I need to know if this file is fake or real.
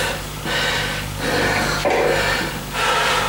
real